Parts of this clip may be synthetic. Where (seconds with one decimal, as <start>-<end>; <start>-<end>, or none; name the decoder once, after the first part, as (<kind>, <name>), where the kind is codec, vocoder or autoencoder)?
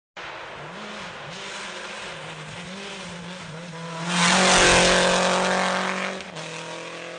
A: none